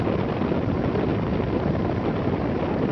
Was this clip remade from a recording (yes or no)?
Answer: no